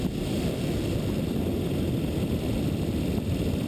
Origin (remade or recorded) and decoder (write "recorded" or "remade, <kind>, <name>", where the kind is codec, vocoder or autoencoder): recorded